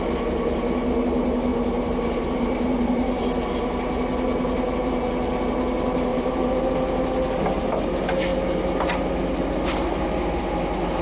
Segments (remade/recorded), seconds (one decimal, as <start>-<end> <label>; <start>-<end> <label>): 0.0-1.5 recorded; 1.5-3.2 remade; 3.2-4.3 recorded; 4.3-5.0 remade; 5.0-6.1 recorded; 6.1-6.7 remade; 6.7-11.0 recorded

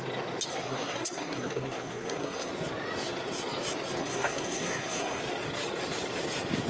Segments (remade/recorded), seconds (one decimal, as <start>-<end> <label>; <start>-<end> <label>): 0.0-0.5 recorded; 0.5-2.5 remade; 2.5-4.0 recorded; 4.0-5.2 remade; 5.2-6.7 recorded